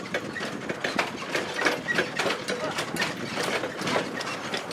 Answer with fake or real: real